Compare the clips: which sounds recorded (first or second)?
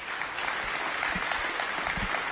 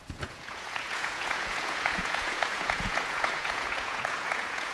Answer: first